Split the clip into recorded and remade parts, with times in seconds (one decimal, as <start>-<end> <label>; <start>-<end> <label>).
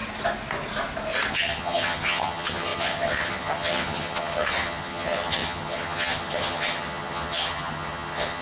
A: 0.0-1.3 recorded; 1.3-8.4 remade